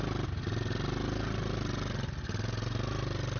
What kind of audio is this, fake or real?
real